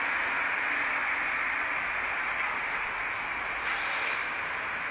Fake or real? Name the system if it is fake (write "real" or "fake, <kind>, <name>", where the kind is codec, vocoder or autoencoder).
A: real